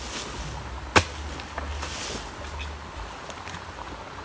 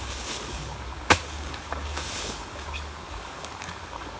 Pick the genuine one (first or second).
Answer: first